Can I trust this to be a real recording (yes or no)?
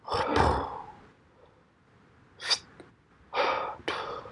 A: yes